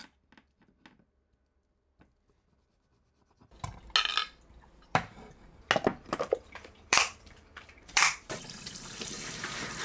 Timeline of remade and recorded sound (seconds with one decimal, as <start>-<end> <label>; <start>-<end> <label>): 0.0-4.2 recorded; 4.2-5.4 remade; 5.4-5.9 recorded; 5.9-9.8 remade